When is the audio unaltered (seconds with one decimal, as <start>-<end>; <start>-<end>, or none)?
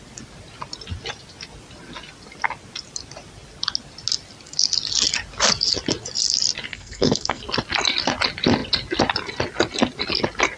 0.0-6.7; 7.4-10.6